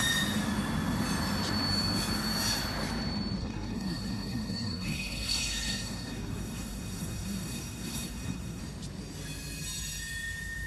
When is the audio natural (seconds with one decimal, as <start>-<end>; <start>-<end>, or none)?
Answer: 0.0-3.4; 8.6-10.7